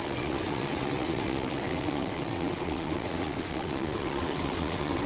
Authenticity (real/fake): fake